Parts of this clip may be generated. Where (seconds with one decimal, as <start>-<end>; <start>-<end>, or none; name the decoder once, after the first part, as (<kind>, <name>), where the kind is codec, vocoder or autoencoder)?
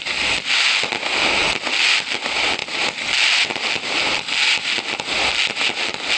none